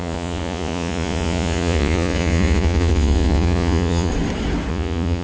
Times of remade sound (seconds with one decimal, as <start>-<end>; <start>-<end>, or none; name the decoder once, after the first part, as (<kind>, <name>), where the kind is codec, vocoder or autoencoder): 0.0-4.1 (vocoder, Vocos); 4.7-5.2